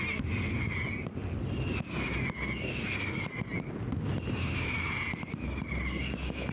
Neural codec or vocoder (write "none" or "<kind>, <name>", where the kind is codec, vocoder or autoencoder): none